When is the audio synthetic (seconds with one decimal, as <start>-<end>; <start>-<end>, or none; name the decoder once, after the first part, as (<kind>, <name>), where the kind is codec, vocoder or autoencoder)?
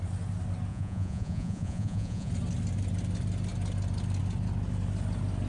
0.7-2.3 (vocoder, Vocos)